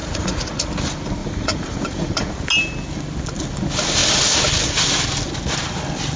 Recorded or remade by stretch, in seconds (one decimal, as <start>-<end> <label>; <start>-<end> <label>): 0.0-0.7 remade; 0.7-1.2 recorded; 1.2-2.3 remade; 2.3-6.2 recorded